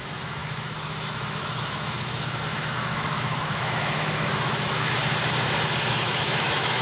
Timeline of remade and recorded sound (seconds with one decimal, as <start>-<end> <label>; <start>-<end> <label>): 0.0-5.0 remade; 5.0-5.9 recorded; 5.9-6.8 remade